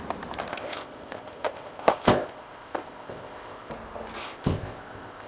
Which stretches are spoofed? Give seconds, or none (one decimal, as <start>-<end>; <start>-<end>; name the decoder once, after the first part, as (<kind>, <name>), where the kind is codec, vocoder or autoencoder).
0.5-3.7 (codec, ZipCodec); 4.2-5.3